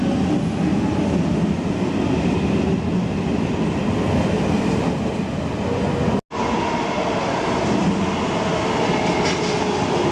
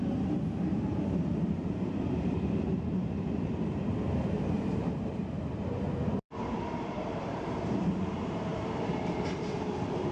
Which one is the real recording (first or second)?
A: first